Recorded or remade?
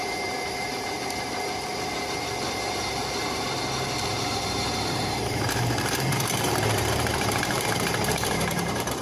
remade